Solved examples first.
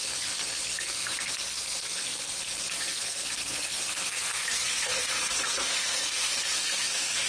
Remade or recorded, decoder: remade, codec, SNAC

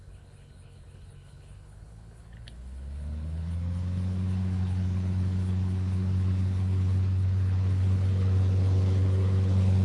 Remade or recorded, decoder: remade, codec, HILCodec